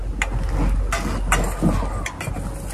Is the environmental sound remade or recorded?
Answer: recorded